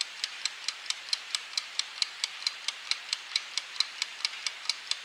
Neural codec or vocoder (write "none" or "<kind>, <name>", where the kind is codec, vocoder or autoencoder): vocoder, BigVGAN v2